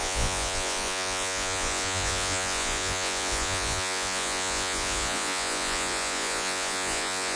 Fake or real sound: fake